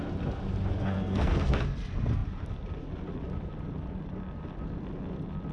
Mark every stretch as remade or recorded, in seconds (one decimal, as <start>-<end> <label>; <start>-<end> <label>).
0.0-0.8 recorded; 0.8-1.6 remade; 1.6-5.5 recorded